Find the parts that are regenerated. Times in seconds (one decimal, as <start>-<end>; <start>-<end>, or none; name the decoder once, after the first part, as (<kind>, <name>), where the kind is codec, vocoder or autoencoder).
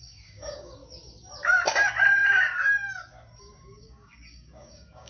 0.0-0.8 (codec, DAC); 3.4-5.1